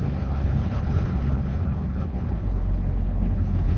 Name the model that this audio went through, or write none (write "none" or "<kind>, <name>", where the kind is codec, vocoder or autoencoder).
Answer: codec, HILCodec